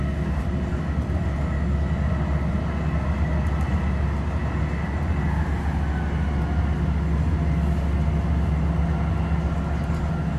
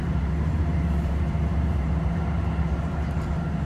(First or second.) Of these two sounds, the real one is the first